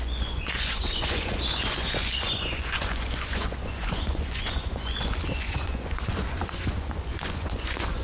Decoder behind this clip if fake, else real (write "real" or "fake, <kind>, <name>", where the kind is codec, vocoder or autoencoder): fake, vocoder, Vocos